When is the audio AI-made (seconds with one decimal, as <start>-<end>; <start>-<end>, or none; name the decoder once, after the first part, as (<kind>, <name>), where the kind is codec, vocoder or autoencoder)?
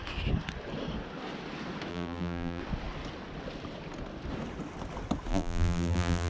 1.9-2.6 (vocoder, BigVGAN v2); 5.3-6.3